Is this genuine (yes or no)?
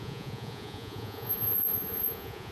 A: no